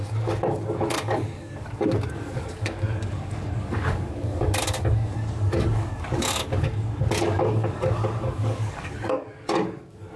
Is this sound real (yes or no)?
no